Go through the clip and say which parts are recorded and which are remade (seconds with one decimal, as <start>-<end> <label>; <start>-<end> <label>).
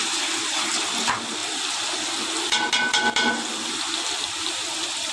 0.0-5.1 recorded